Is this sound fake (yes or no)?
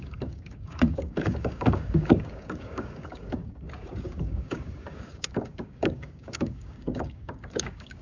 yes